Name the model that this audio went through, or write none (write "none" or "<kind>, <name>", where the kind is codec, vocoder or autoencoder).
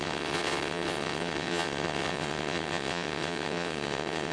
vocoder, WaveNeXt